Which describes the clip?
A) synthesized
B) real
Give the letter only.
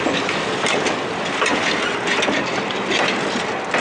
B